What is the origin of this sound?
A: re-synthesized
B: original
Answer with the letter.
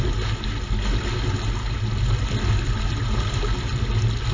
B